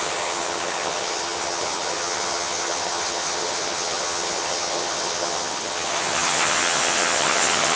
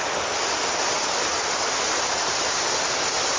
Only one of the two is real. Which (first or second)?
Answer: second